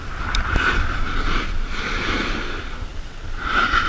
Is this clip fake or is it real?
real